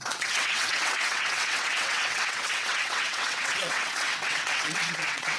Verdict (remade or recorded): remade